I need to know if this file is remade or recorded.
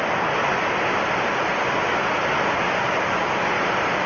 recorded